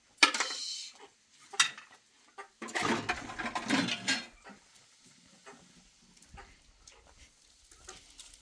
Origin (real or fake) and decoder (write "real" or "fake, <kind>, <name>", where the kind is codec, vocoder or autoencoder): real